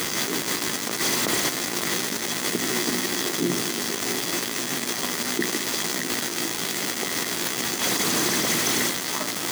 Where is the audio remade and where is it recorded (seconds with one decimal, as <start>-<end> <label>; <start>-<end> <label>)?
0.0-1.0 remade; 1.0-1.5 recorded; 1.5-7.8 remade; 7.8-8.9 recorded; 8.9-9.5 remade